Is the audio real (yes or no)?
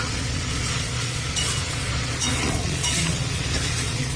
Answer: no